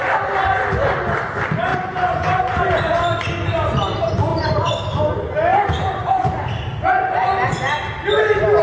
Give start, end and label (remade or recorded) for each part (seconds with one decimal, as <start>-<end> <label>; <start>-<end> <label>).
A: 0.0-1.7 recorded; 1.7-2.6 remade; 2.6-4.3 recorded; 4.3-5.0 remade; 5.0-5.5 recorded; 5.5-6.1 remade; 6.1-8.6 recorded